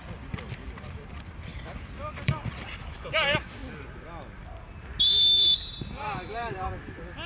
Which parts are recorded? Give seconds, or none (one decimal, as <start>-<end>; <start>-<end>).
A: 3.6-5.8